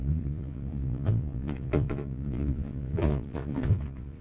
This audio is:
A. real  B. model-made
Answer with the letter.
B